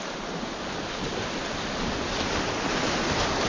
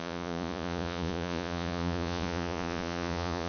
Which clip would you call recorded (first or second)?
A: first